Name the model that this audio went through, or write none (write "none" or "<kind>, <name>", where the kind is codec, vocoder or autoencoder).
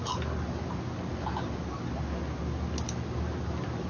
none